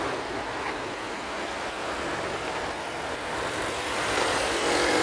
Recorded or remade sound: recorded